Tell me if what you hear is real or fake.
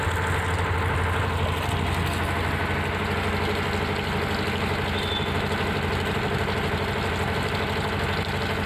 real